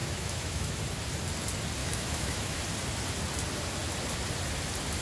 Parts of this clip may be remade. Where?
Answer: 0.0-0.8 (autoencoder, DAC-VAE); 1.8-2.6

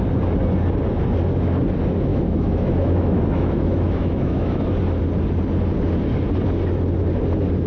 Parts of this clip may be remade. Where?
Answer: 2.1-4.6 (autoencoder, DAC-VAE)

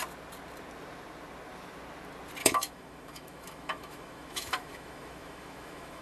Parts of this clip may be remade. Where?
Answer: 2.4-6.0 (autoencoder, DAC-VAE)

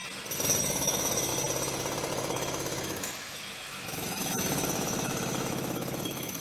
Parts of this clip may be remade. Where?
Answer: 0.6-1.3 (autoencoder, DAC-VAE); 2.1-6.4